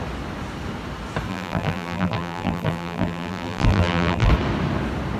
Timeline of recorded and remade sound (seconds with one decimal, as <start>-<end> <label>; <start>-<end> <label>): 0.0-1.3 recorded; 1.3-4.3 remade; 4.3-5.2 recorded